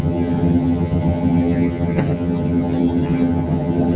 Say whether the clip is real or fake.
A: fake